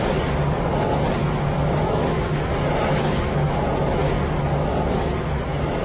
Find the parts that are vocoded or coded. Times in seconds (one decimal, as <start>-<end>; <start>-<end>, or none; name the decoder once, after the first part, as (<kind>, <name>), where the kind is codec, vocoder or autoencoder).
1.2-2.3 (autoencoder, DAC-VAE)